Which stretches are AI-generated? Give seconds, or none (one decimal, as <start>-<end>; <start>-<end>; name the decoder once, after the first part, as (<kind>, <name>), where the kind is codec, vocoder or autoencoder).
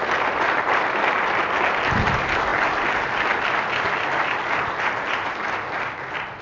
none